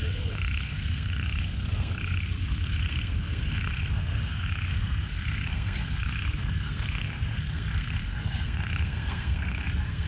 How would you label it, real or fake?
fake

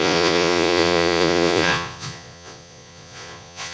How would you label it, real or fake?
fake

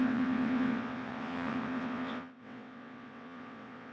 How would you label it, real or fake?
fake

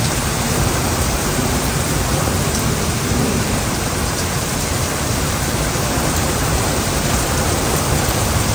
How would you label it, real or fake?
fake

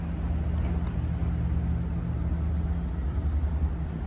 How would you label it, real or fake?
real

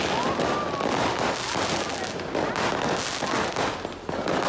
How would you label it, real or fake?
real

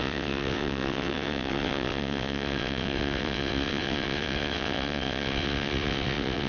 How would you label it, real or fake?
fake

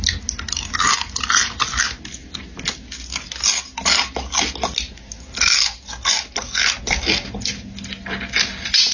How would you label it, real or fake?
real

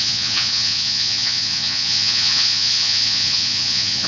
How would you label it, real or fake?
fake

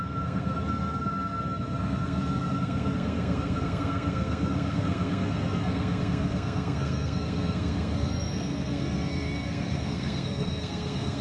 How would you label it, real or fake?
fake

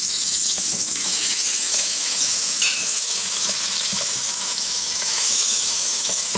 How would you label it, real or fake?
fake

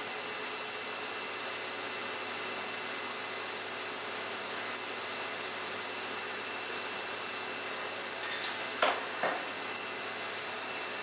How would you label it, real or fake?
real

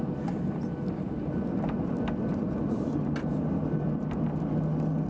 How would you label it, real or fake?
real